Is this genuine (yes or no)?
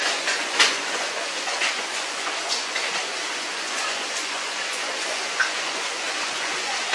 no